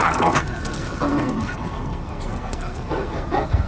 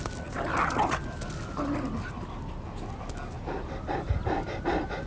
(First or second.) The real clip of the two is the second